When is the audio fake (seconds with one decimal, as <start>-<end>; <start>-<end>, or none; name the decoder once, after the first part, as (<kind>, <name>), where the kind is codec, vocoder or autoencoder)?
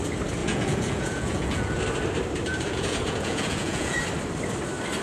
0.4-1.8 (vocoder, Vocos); 2.5-4.0